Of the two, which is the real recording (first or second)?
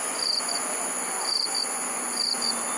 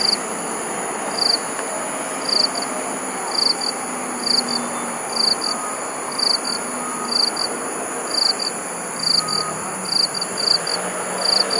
second